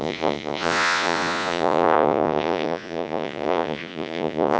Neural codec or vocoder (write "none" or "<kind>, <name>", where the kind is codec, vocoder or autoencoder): vocoder, Vocos